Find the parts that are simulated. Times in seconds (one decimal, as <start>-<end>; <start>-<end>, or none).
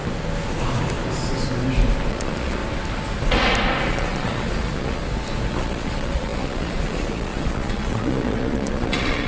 2.1-2.6; 3.9-5.0; 5.5-9.3